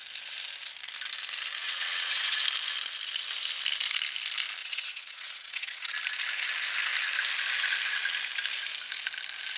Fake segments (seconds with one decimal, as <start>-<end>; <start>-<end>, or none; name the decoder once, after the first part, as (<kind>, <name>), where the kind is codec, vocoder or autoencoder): 1.6-2.4 (vocoder, WaveNeXt); 4.6-5.9